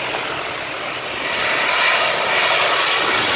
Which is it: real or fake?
fake